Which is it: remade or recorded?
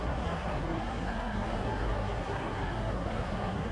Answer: remade